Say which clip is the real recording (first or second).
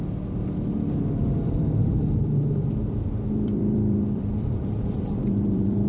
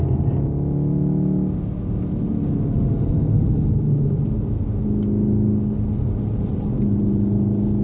second